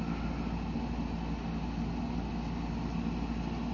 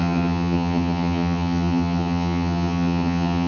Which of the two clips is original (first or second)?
first